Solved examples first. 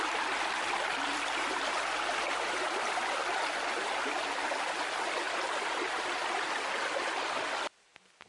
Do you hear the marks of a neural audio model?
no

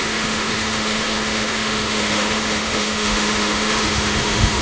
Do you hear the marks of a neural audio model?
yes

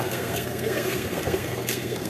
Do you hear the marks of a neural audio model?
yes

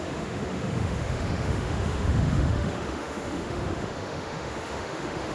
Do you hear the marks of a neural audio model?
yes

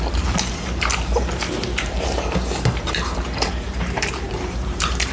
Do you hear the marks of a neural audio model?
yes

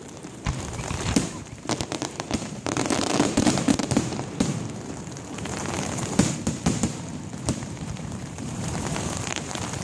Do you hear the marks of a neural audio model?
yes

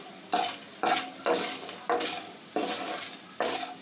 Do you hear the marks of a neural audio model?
no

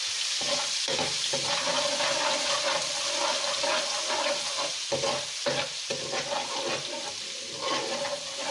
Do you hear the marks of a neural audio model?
no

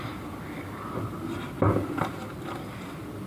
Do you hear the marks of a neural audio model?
no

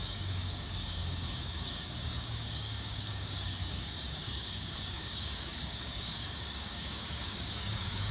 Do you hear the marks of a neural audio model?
yes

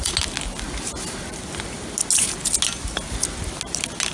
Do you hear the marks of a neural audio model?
no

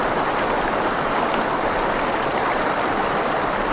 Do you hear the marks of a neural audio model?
no